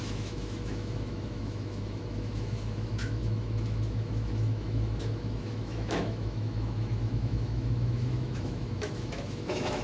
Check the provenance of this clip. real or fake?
fake